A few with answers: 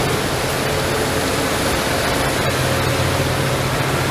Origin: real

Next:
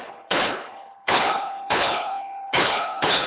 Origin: fake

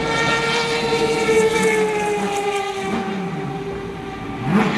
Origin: real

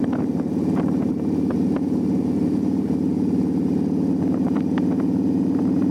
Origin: real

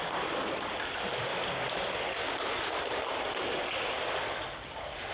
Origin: fake